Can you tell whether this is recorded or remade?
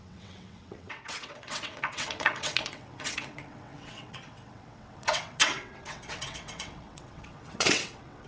remade